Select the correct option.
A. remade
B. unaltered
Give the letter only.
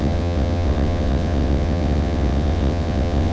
A